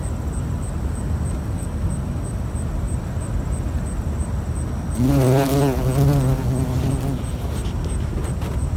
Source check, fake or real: real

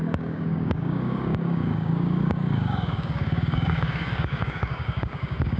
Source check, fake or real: fake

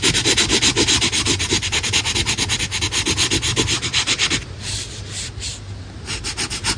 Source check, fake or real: real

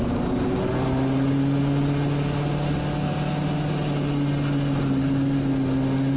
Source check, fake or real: real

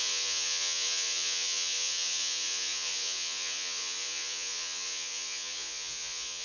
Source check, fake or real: fake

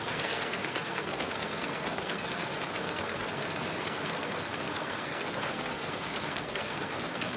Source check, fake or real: fake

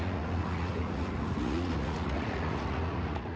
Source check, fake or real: fake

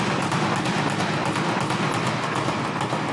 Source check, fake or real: real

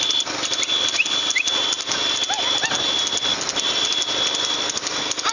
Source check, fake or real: real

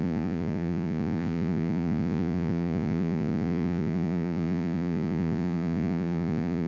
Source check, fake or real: fake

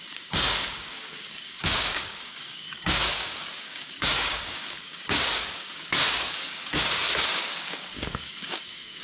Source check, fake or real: fake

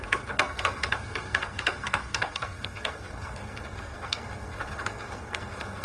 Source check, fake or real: fake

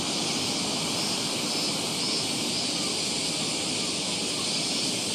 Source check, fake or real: real